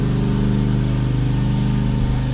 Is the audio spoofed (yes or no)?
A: no